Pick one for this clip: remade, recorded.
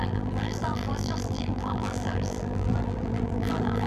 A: remade